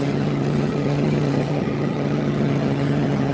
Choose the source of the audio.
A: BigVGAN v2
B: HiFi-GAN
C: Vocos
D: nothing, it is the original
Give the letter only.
B